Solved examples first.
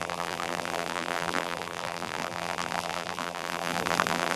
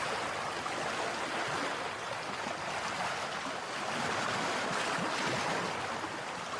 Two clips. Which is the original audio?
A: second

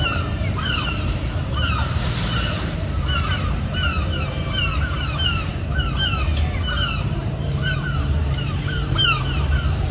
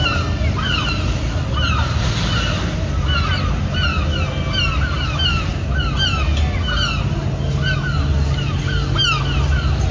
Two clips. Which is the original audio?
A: second